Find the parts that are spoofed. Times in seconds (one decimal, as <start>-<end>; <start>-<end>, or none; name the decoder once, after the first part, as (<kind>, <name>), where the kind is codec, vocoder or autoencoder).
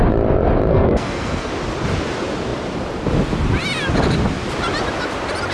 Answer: 0.7-1.5 (codec, SNAC)